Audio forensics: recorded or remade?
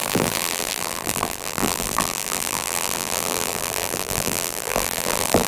remade